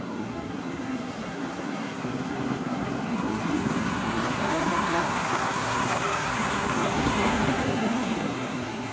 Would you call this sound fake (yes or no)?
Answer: yes